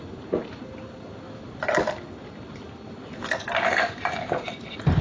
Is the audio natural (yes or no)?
yes